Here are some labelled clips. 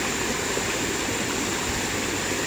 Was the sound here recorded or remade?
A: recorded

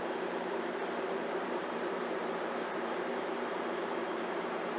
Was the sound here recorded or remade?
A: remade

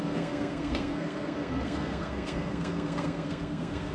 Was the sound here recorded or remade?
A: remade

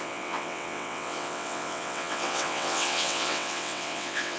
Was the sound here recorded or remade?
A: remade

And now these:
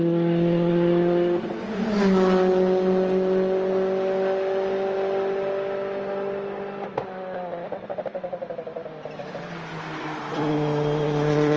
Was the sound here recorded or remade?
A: recorded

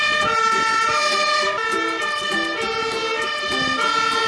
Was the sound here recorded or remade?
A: recorded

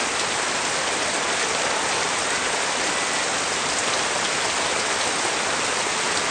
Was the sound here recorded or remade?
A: recorded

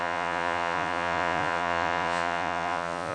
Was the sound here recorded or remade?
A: remade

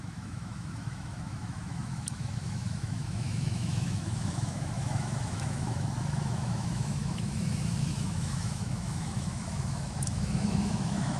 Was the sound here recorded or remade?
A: remade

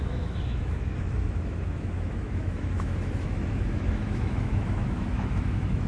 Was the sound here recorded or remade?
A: remade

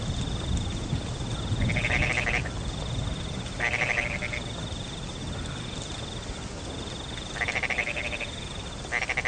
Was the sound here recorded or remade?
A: recorded